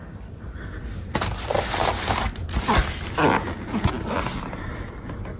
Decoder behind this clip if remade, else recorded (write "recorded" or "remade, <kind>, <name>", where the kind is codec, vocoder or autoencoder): recorded